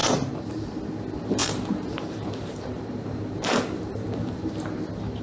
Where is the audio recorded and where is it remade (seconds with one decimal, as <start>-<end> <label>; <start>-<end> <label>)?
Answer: 0.0-0.7 remade; 0.7-1.4 recorded; 1.4-4.5 remade; 4.5-5.2 recorded